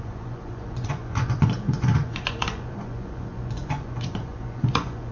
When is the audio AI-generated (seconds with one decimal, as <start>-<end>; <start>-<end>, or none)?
0.0-5.1